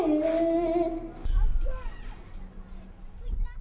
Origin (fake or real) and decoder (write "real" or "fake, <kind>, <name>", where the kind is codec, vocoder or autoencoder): real